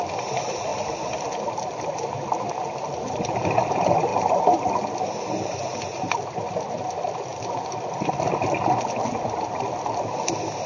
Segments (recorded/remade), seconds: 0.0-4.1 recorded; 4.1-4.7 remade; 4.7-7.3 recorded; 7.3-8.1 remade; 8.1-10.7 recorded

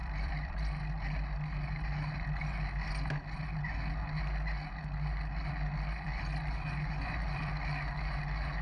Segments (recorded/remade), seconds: 0.0-0.8 remade; 0.8-8.6 recorded

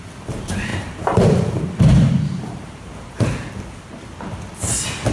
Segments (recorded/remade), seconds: 0.0-0.7 recorded; 0.7-3.5 remade; 3.5-5.1 recorded